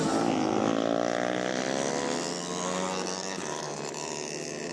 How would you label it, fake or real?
real